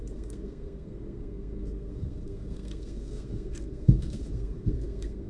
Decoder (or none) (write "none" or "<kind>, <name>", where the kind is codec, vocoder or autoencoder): codec, SNAC